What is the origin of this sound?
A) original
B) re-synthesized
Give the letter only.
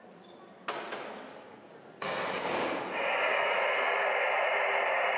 A